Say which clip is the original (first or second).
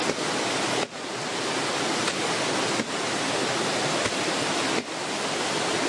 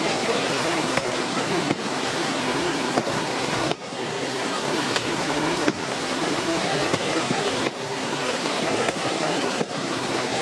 first